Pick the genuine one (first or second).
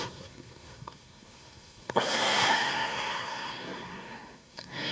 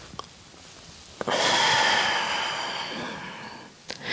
second